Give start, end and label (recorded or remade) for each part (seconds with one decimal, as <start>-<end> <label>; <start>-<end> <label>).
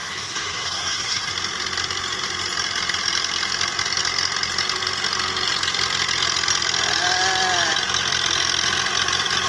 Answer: 0.0-1.3 remade; 1.3-9.5 recorded